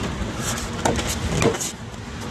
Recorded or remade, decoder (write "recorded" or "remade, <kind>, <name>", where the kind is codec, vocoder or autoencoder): recorded